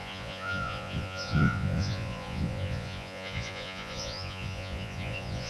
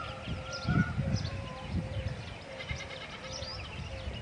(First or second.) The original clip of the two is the second